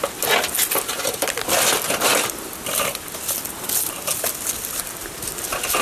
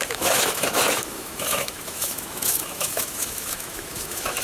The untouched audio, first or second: first